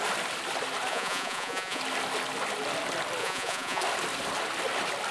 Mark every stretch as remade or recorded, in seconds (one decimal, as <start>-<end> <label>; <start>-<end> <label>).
0.0-0.9 recorded; 0.9-1.8 remade; 1.8-3.2 recorded; 3.2-3.8 remade; 3.8-5.1 recorded